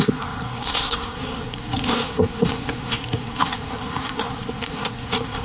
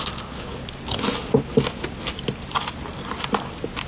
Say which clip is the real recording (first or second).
second